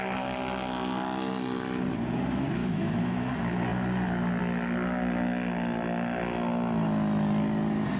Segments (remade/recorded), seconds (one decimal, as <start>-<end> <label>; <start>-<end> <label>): 0.0-2.6 recorded; 2.6-3.3 remade; 3.3-8.0 recorded